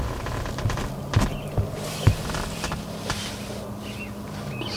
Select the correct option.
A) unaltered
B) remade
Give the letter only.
A